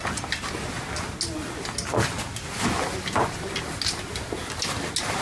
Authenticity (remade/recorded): recorded